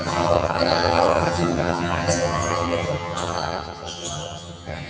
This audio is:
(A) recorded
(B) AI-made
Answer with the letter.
B